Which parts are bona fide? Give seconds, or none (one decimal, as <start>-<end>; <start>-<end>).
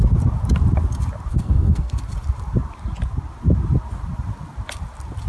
0.0-1.3; 2.0-5.3